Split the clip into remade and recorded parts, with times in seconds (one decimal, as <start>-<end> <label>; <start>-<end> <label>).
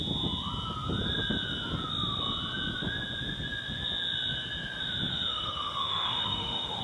0.0-5.1 recorded; 5.1-6.8 remade